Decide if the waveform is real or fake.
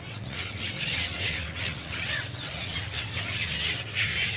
fake